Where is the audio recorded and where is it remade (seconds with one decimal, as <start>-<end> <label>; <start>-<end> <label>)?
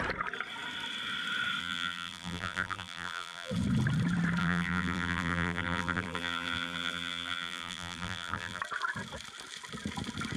0.0-1.6 recorded; 1.6-3.5 remade; 3.5-4.4 recorded; 4.4-8.6 remade; 8.6-10.4 recorded